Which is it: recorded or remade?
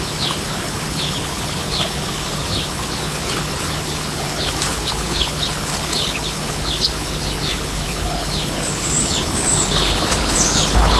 remade